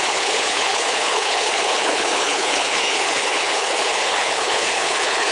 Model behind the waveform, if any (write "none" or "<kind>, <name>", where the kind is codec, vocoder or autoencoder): codec, HILCodec